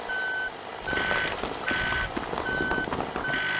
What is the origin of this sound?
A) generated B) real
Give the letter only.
B